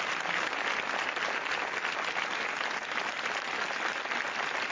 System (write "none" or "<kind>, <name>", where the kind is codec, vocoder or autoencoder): none